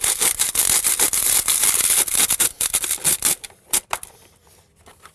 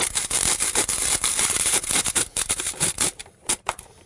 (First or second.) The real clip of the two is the first